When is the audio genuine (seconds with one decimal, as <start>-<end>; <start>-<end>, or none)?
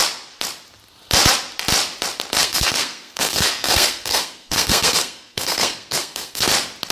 0.0-2.4; 6.5-6.9